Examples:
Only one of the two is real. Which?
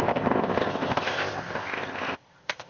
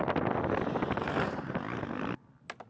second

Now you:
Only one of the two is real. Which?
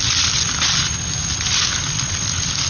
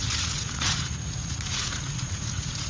first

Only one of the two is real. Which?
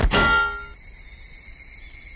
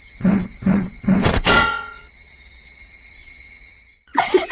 first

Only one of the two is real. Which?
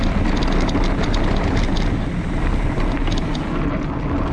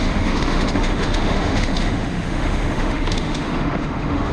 first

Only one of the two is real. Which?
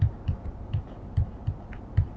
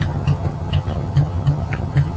first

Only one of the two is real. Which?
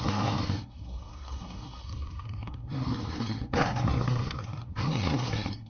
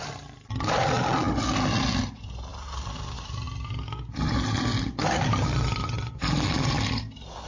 second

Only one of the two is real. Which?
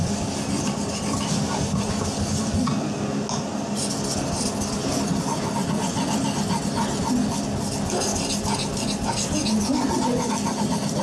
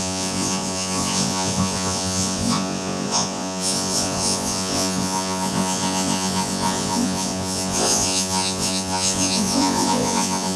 first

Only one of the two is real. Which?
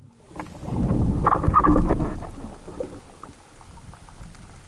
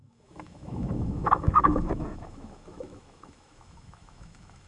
first